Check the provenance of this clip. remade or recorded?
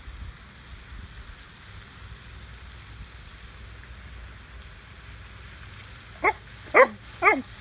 recorded